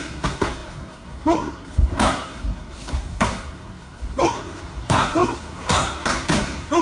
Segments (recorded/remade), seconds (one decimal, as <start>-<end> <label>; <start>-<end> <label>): 0.0-6.8 remade